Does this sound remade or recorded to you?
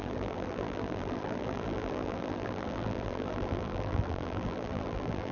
remade